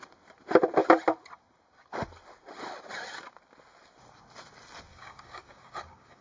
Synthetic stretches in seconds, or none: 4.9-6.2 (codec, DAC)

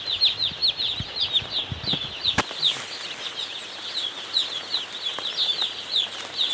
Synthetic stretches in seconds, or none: none